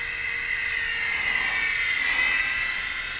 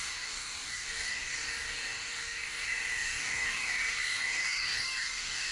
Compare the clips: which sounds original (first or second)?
first